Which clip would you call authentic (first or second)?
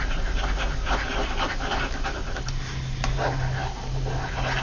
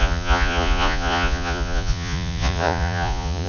first